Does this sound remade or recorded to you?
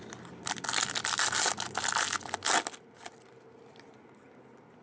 recorded